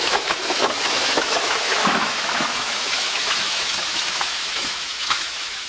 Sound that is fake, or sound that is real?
fake